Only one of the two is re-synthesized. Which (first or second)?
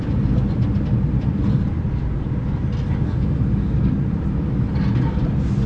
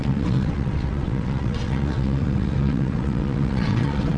second